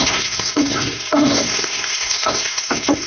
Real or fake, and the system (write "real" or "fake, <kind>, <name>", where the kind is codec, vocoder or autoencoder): fake, codec, SNAC